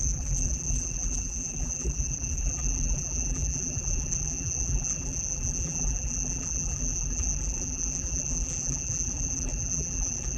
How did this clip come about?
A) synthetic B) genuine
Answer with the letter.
A